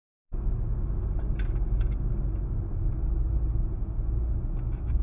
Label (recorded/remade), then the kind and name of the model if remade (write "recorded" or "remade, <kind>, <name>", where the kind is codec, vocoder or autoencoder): recorded